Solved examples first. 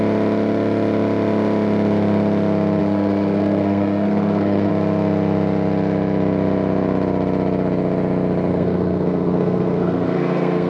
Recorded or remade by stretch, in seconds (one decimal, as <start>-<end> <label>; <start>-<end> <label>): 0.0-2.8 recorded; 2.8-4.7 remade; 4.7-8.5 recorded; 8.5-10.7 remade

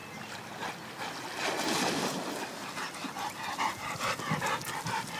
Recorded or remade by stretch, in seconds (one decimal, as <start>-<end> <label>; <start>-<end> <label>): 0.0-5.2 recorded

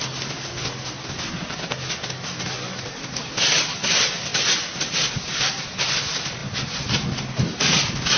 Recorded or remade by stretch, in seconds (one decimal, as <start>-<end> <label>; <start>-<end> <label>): 0.0-8.2 recorded

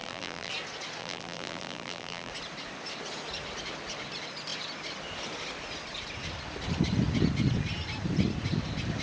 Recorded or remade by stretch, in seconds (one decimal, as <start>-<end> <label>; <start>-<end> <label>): 0.0-0.5 remade; 0.5-1.0 recorded; 1.0-2.3 remade; 2.3-9.0 recorded

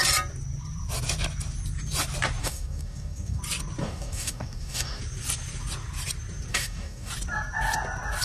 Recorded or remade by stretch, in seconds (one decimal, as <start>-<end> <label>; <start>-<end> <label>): 0.0-2.4 recorded; 2.4-3.4 remade; 3.4-3.8 recorded; 3.8-5.0 remade; 5.0-6.5 recorded; 6.5-7.1 remade; 7.1-8.2 recorded

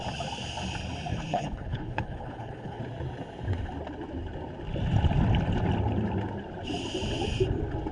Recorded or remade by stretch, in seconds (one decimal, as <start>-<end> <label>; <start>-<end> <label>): 0.0-1.1 recorded; 1.1-2.8 remade; 2.8-7.9 recorded

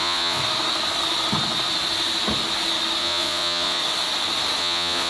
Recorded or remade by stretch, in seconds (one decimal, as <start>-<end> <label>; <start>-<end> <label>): 0.0-0.4 remade; 0.4-3.0 recorded; 3.0-3.8 remade; 3.8-4.6 recorded; 4.6-5.1 remade